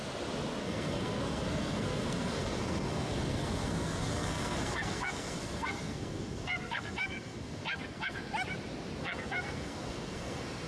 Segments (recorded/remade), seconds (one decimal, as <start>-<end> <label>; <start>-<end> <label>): 0.0-0.6 recorded; 0.6-8.3 remade; 8.3-9.0 recorded; 9.0-10.7 remade